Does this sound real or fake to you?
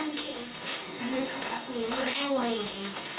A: fake